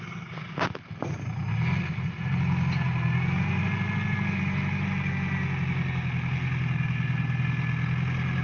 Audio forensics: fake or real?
real